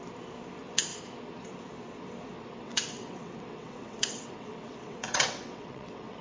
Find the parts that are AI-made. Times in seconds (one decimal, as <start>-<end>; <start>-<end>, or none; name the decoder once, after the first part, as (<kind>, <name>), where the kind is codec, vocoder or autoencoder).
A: 2.6-6.2 (vocoder, WaveNeXt)